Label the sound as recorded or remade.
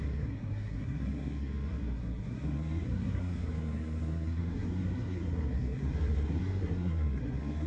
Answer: remade